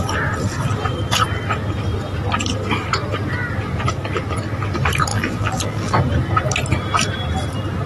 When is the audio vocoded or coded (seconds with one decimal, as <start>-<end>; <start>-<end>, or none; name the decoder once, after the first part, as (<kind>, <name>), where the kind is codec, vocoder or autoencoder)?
5.1-6.0 (vocoder, BigVGAN v2)